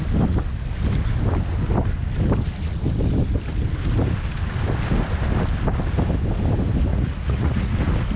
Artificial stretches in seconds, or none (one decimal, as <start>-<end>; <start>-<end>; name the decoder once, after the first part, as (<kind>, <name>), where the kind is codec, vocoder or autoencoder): 6.9-7.7 (vocoder, Vocos)

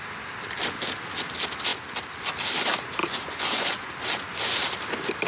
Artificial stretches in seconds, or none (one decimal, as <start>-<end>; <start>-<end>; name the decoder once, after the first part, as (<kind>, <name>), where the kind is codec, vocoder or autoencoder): 3.0-3.9 (vocoder, Vocos)